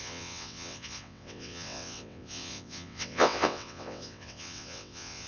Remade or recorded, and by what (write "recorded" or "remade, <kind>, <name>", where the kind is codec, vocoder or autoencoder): remade, vocoder, WaveNeXt